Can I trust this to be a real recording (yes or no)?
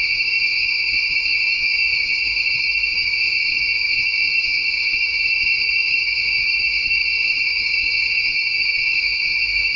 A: no